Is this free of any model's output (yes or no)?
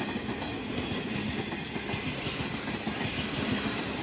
yes